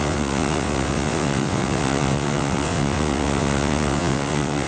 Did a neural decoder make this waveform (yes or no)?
yes